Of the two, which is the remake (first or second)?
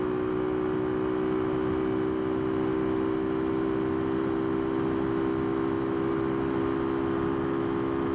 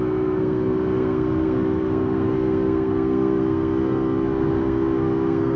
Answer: second